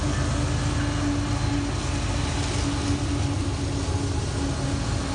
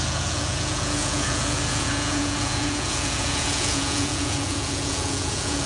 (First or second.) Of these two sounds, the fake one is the second